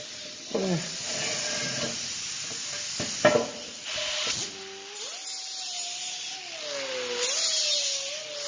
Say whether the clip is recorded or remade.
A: recorded